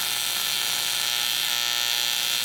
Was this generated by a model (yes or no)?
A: yes